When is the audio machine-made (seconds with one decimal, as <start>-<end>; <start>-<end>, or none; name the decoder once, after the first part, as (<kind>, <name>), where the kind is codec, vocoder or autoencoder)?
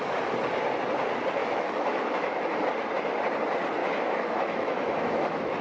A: 1.4-2.6 (autoencoder, DAC-VAE); 3.8-5.6